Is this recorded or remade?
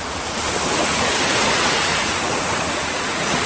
remade